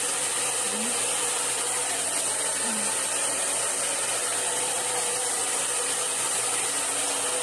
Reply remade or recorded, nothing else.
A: remade